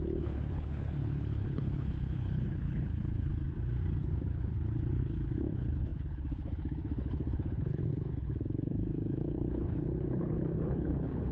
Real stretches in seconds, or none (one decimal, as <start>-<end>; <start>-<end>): 3.3-4.0